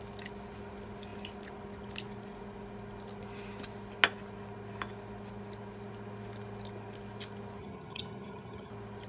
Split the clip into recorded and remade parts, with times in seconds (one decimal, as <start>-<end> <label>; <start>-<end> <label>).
0.0-7.6 recorded; 7.6-8.7 remade; 8.7-9.1 recorded